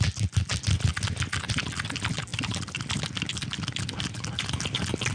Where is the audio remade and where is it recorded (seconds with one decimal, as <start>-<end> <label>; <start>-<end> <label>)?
0.0-5.1 recorded